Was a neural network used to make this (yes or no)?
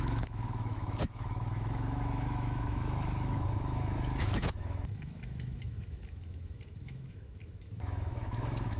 yes